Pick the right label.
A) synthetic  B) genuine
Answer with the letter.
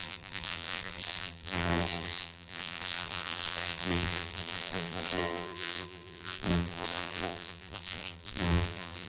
A